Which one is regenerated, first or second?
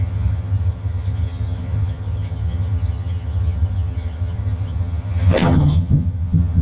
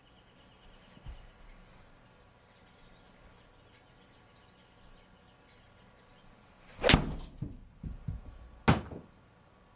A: first